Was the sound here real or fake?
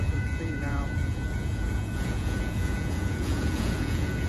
fake